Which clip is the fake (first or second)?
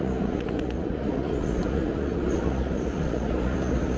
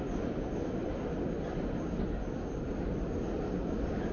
first